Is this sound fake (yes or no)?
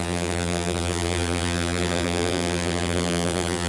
yes